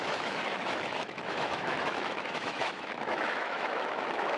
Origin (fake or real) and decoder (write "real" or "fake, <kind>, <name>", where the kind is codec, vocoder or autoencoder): fake, autoencoder, DAC-VAE